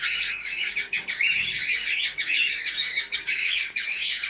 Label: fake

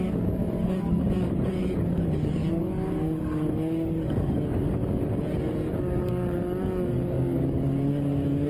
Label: fake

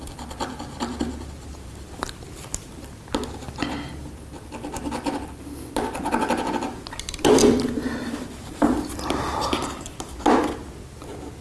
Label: real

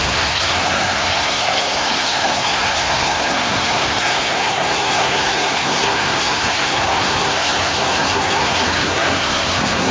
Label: fake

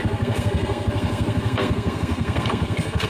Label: fake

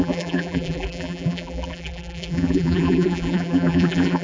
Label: fake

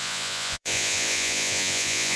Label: fake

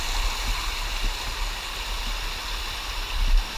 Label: real